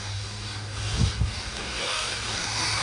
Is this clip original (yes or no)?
no